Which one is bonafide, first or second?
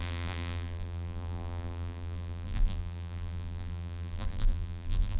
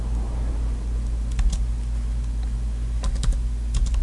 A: second